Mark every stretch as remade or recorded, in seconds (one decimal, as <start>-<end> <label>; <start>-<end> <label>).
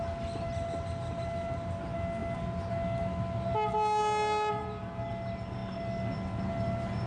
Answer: 0.0-7.1 recorded